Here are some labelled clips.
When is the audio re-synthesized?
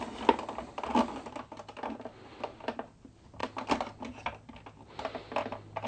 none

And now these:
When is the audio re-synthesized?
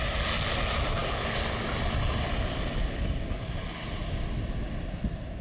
none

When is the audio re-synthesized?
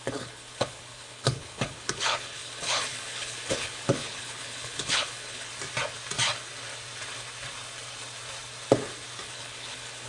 0.0-5.5 (codec, HILCodec); 9.2-10.1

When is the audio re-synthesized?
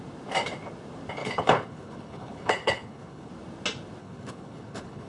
1.2-3.3 (codec, HILCodec); 4.0-5.1